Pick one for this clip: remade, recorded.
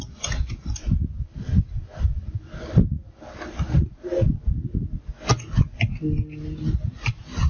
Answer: recorded